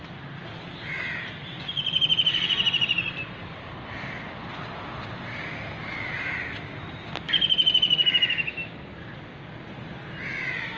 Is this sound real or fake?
real